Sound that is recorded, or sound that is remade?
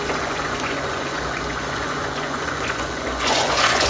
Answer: remade